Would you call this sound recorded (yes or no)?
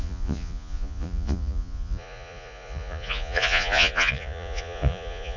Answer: no